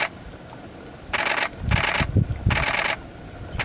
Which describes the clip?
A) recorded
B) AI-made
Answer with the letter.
A